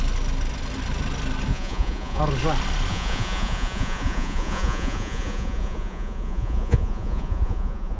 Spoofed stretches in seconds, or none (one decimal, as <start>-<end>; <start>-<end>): 1.5-2.2; 2.9-8.0